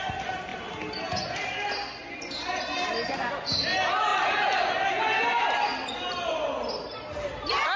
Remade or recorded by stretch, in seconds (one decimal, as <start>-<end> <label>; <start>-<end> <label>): 0.0-7.8 recorded